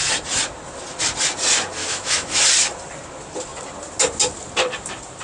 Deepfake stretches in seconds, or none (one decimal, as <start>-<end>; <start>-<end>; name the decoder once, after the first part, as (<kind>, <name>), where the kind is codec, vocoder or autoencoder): 1.8-2.4 (autoencoder, DAC-VAE)

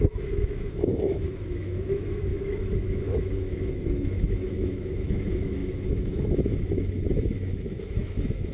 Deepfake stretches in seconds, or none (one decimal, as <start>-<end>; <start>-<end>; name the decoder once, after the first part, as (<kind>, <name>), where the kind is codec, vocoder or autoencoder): 0.0-8.5 (autoencoder, DAC-VAE)

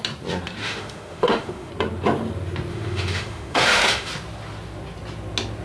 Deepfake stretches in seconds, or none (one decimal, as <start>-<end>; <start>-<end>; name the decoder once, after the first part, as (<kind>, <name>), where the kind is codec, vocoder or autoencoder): 0.6-1.7 (autoencoder, DAC-VAE); 2.7-4.1

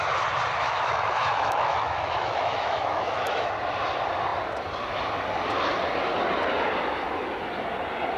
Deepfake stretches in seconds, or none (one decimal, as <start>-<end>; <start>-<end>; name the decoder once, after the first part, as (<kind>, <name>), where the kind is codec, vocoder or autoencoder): 0.6-3.5 (autoencoder, DAC-VAE)

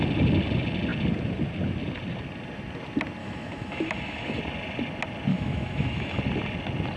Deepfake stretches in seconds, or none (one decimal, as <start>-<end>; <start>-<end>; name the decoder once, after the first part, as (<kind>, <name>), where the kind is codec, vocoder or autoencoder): 3.2-4.4 (autoencoder, DAC-VAE); 5.3-6.2

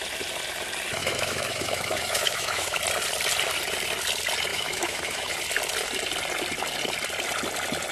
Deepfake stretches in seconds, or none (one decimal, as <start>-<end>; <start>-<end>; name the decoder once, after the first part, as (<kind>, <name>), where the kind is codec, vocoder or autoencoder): 1.0-2.8 (autoencoder, DAC-VAE); 4.5-5.3